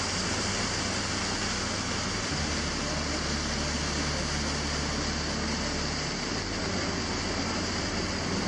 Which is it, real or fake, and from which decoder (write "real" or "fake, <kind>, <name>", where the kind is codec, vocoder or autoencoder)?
real